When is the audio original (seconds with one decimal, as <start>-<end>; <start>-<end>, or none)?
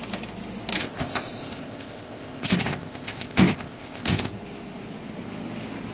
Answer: 0.0-0.8; 4.3-5.9